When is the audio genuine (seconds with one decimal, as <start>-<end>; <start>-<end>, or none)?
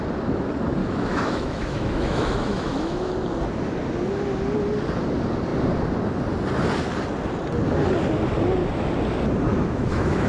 0.0-0.8; 3.1-9.5